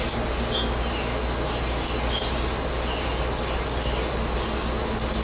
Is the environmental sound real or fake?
real